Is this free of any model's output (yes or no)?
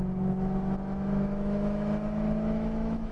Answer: no